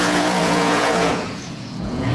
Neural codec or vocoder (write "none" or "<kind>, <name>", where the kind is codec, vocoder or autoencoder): vocoder, Vocos